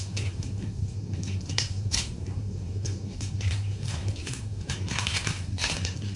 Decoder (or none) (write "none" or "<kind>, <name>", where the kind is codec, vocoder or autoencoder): codec, SNAC